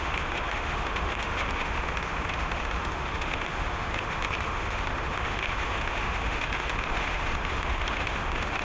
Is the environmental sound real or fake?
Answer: fake